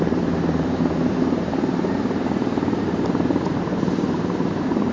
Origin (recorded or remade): remade